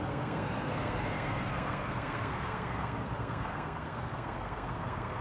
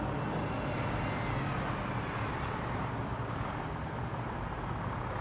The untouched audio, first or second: second